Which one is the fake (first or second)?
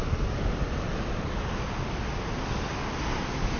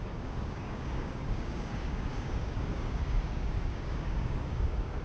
second